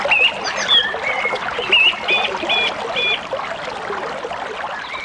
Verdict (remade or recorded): recorded